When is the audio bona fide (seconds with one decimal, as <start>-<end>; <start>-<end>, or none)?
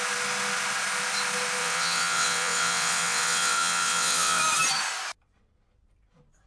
0.0-1.6; 4.4-6.5